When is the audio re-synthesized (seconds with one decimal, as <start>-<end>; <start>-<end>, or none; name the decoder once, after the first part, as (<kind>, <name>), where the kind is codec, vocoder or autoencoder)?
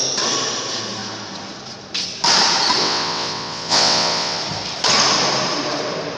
2.8-4.4 (vocoder, WaveNeXt)